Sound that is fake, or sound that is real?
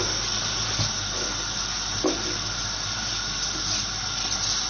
fake